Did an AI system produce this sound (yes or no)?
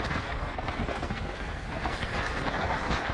yes